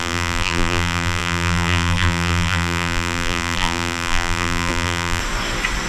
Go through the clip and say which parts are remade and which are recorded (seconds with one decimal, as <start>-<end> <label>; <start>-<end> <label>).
0.0-5.2 remade; 5.2-5.9 recorded